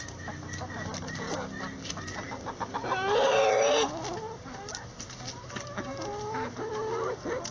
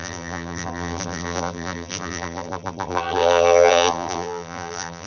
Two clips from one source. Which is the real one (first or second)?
first